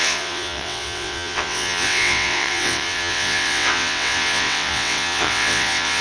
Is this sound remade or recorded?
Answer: remade